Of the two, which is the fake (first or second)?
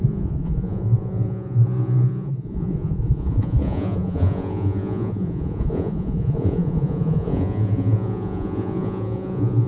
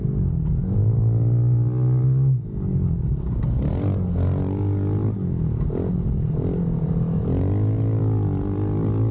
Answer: first